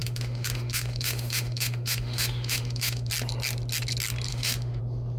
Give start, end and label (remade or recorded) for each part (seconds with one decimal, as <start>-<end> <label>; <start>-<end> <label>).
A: 0.0-3.1 remade; 3.1-4.3 recorded; 4.3-4.8 remade; 4.8-5.2 recorded

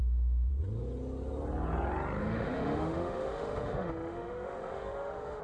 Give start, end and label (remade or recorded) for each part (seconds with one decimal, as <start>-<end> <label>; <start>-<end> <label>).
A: 0.0-0.5 remade; 0.5-2.2 recorded; 2.2-5.4 remade

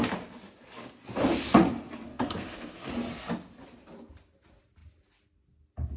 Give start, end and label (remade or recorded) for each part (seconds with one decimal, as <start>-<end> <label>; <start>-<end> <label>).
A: 0.0-2.1 recorded; 2.1-2.9 remade; 2.9-6.0 recorded

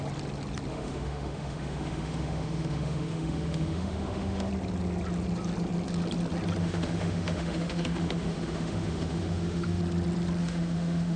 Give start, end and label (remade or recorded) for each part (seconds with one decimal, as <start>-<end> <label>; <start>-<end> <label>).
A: 0.0-0.7 recorded; 0.7-4.5 remade; 4.5-6.6 recorded; 6.6-9.8 remade; 9.8-10.4 recorded; 10.4-11.2 remade

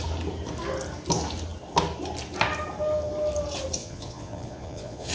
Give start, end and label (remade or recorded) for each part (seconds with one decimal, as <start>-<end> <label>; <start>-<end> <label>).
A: 0.0-3.8 recorded; 3.8-5.1 remade